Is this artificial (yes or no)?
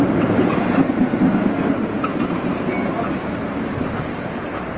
yes